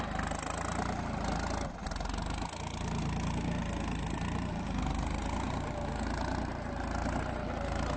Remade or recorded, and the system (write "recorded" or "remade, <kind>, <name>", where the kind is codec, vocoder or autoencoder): recorded